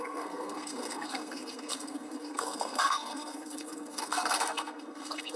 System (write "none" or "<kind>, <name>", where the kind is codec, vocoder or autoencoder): codec, SNAC